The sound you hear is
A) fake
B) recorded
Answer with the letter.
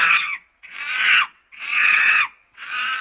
A